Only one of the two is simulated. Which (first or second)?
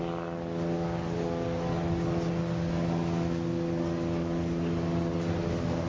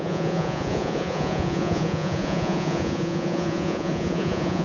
second